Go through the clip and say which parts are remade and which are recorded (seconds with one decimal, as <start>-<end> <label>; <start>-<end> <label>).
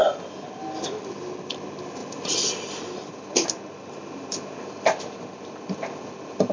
0.0-6.5 recorded